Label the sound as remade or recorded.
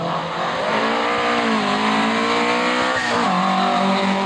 recorded